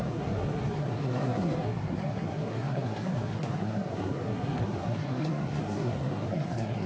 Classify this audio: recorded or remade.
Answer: remade